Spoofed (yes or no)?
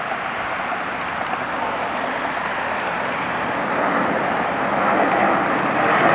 no